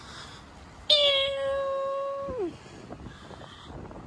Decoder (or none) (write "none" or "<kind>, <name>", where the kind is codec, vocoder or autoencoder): none